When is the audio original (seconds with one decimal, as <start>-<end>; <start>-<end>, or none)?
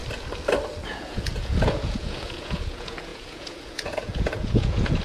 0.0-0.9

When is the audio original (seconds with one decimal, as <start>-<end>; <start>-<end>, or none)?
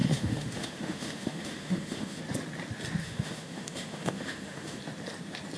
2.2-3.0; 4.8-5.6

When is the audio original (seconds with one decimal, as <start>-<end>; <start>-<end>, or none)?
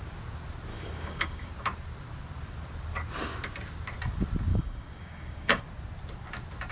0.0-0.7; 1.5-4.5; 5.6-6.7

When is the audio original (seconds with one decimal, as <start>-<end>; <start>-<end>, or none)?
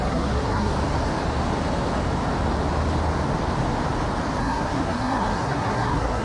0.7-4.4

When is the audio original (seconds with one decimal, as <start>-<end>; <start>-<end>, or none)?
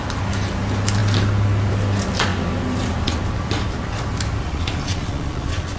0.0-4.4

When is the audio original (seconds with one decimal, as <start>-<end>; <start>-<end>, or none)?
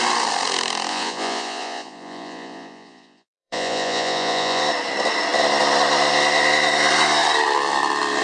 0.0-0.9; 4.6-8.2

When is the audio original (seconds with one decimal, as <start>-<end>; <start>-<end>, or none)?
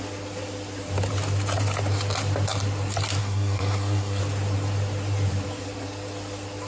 0.0-3.2; 4.2-6.7